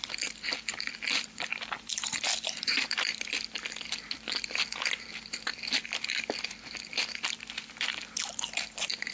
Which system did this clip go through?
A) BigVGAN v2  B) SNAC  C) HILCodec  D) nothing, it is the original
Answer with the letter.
A